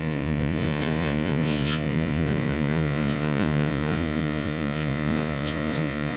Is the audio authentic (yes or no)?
no